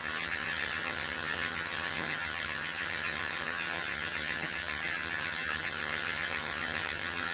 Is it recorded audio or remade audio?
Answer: remade